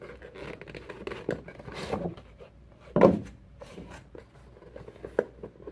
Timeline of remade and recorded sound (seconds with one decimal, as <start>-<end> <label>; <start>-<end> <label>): 0.0-2.1 recorded; 2.1-4.2 remade; 4.2-5.7 recorded